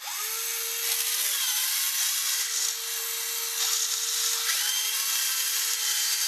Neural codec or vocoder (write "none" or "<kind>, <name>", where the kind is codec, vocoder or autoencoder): none